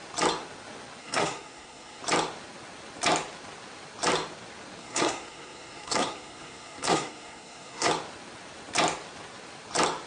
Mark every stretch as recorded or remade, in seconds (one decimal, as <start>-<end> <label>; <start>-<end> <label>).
0.0-1.0 recorded; 1.0-2.0 remade; 2.0-4.8 recorded; 4.8-7.9 remade; 7.9-10.1 recorded